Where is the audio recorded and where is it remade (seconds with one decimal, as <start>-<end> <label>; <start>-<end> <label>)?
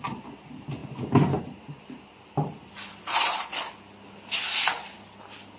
0.0-5.6 recorded